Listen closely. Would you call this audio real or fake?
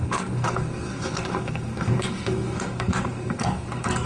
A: fake